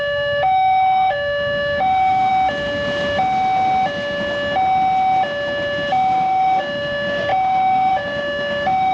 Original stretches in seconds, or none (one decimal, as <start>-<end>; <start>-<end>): 2.3-5.9